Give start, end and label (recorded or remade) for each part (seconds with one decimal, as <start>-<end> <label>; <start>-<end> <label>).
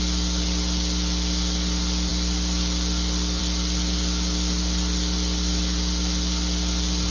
0.0-7.1 recorded